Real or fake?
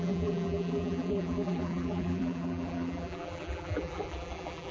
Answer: fake